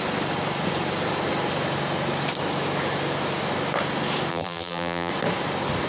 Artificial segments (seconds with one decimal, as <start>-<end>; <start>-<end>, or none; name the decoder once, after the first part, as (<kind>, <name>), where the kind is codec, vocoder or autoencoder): 4.3-5.1 (vocoder, BigVGAN v2)